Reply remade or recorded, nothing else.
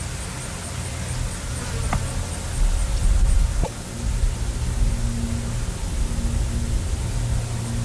recorded